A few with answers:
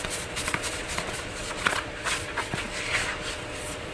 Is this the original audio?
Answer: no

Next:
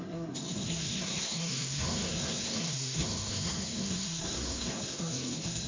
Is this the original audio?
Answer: no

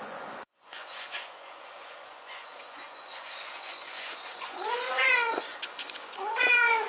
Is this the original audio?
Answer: no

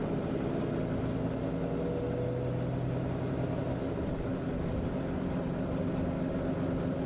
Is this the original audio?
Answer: yes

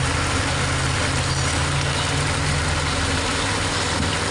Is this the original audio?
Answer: yes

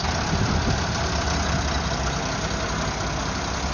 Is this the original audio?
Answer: yes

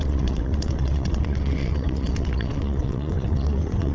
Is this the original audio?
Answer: no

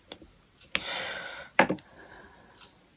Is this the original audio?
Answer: yes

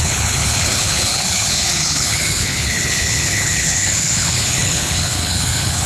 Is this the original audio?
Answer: no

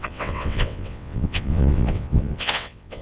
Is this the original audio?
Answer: no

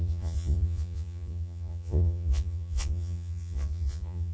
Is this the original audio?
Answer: no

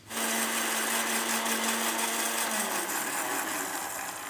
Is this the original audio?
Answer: yes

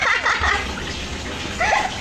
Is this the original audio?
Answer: yes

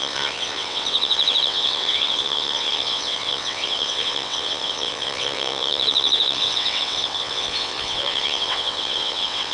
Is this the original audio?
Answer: no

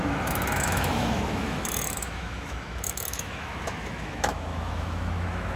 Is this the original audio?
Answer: no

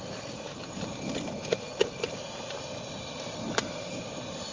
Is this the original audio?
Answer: yes